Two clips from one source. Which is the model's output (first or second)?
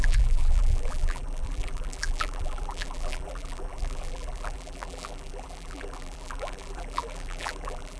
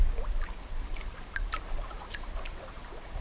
first